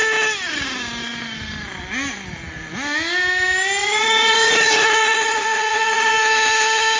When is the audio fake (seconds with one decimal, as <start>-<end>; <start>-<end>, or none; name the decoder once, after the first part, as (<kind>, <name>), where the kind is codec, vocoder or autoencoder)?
3.8-6.1 (vocoder, Vocos)